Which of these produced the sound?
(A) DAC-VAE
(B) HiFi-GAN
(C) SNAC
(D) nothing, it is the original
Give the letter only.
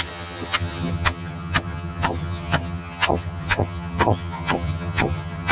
B